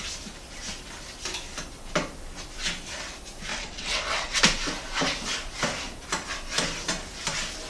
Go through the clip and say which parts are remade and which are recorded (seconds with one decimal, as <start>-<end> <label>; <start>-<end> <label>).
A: 0.0-3.5 recorded; 3.5-4.4 remade; 4.4-7.7 recorded